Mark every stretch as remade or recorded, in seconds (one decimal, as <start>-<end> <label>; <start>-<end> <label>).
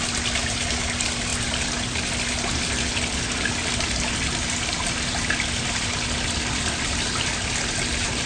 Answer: 0.0-8.3 recorded